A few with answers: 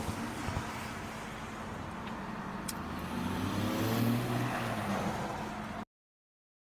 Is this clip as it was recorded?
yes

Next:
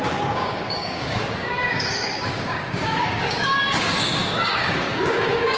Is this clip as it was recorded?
no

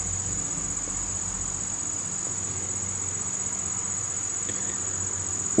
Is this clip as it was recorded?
yes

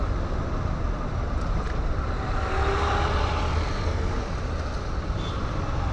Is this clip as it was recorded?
yes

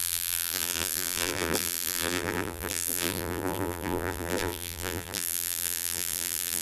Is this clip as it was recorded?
no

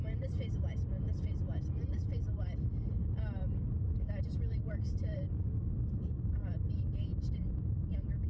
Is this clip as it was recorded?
no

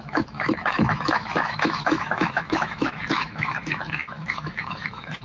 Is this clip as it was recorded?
no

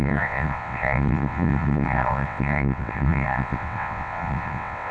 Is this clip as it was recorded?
no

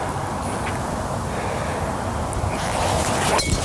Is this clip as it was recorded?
yes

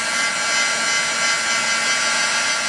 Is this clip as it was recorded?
yes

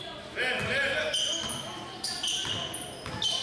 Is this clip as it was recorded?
yes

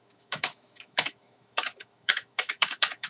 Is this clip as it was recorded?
no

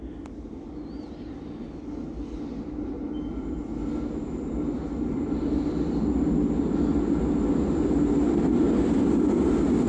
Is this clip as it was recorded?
yes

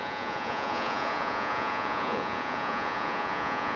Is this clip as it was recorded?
no